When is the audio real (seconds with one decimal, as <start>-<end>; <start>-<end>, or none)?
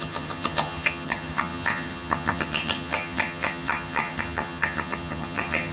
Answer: none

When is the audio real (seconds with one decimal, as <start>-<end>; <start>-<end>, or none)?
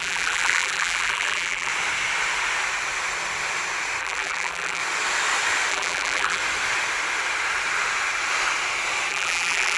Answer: 1.7-4.0; 4.8-5.7; 6.4-9.1